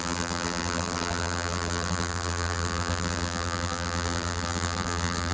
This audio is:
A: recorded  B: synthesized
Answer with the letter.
B